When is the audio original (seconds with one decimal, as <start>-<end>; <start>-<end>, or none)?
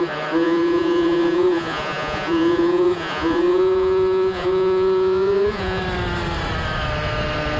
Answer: 5.8-7.6